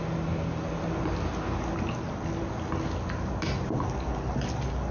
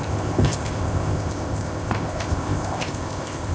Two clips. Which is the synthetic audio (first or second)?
second